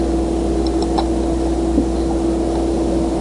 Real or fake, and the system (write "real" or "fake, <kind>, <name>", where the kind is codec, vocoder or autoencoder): real